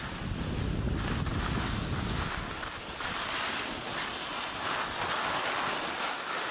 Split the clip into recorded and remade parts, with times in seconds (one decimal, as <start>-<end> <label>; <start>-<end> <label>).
0.0-6.5 recorded